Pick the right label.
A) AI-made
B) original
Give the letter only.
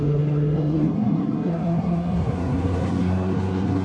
A